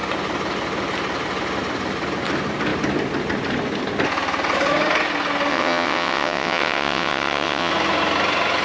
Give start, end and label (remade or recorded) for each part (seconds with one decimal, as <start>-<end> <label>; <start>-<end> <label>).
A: 0.0-5.5 recorded; 5.5-7.7 remade; 7.7-8.6 recorded